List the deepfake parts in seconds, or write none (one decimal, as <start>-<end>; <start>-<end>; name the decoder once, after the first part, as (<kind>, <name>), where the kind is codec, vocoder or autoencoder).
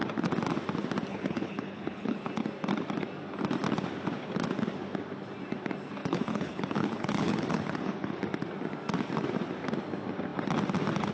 1.1-2.3 (codec, HILCodec); 6.0-8.2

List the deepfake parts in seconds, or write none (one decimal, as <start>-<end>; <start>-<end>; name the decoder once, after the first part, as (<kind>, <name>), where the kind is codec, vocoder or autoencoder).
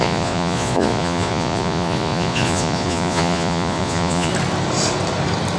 0.0-4.3 (vocoder, Vocos)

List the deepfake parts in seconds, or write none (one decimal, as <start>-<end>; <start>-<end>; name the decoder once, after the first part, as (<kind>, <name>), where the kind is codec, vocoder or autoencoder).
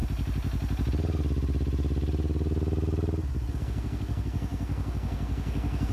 3.5-5.9 (codec, SNAC)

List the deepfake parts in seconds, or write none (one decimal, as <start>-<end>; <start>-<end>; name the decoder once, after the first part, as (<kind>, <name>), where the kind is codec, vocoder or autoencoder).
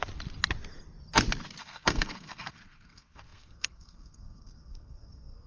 1.6-5.5 (codec, SNAC)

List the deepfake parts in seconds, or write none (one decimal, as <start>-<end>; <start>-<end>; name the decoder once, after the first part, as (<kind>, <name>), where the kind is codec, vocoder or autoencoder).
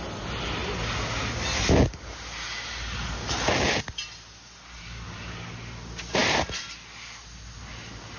none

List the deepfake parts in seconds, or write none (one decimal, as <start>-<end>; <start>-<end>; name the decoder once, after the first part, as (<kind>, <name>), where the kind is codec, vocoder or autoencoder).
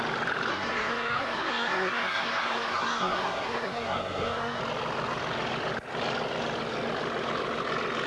0.5-4.6 (codec, SNAC)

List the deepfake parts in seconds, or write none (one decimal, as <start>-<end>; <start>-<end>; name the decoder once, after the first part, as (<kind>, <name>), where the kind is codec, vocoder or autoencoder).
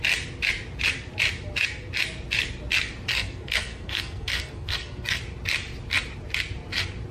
3.1-5.2 (codec, SNAC)